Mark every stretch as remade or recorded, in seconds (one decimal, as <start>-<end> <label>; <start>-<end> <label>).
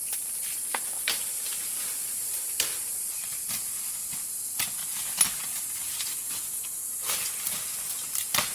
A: 0.0-0.7 recorded; 0.7-3.9 remade; 3.9-8.5 recorded